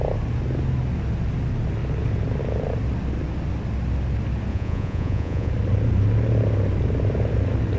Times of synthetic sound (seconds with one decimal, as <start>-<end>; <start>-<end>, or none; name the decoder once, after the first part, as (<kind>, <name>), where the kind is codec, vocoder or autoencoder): 4.5-5.5 (vocoder, Vocos)